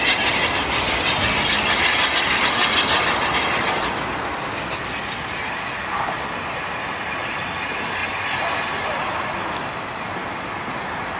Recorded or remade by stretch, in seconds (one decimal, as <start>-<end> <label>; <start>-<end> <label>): 0.0-11.2 recorded